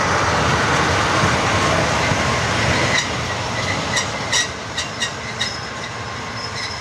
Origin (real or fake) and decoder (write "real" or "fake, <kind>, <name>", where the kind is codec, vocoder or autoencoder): real